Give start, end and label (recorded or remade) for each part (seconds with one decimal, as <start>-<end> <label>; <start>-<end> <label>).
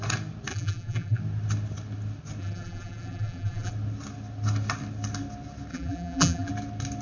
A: 0.0-0.5 recorded; 0.5-1.2 remade; 1.2-2.4 recorded; 2.4-3.7 remade; 3.7-5.7 recorded; 5.7-6.5 remade; 6.5-7.0 recorded